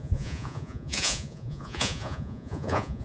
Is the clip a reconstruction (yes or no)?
yes